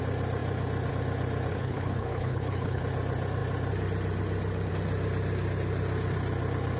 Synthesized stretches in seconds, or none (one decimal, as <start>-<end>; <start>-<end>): 1.5-2.8